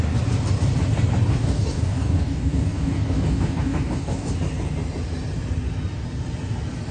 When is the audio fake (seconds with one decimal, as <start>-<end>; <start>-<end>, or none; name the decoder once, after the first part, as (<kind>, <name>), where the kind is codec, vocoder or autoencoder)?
1.3-4.3 (codec, DAC)